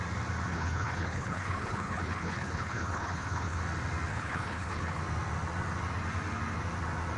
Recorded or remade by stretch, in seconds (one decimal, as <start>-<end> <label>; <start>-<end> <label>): 0.0-0.5 recorded; 0.5-3.6 remade; 3.6-4.1 recorded; 4.1-5.0 remade; 5.0-7.2 recorded